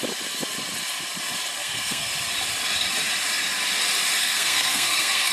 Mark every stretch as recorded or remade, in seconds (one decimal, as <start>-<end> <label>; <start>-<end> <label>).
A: 0.0-1.6 recorded; 1.6-2.1 remade; 2.1-4.2 recorded; 4.2-5.3 remade